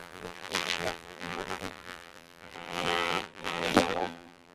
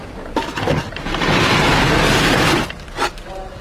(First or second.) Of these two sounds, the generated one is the first